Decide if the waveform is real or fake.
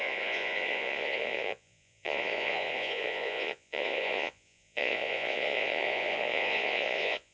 fake